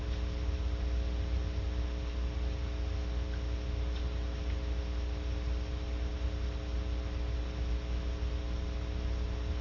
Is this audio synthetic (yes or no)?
no